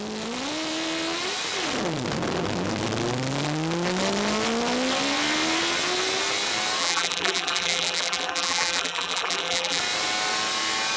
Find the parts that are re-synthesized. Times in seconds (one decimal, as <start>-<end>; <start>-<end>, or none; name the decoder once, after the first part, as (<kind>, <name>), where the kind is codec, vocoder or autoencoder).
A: 6.8-9.8 (vocoder, BigVGAN v2)